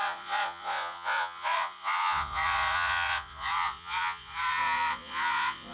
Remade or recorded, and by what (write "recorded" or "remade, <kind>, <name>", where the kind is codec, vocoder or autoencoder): remade, vocoder, Vocos